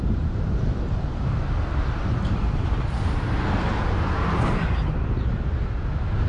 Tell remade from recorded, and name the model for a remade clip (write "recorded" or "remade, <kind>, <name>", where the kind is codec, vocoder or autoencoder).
remade, vocoder, BigVGAN v2